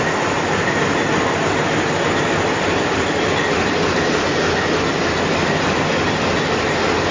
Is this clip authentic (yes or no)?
yes